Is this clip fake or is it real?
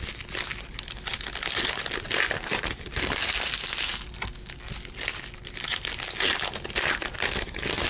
real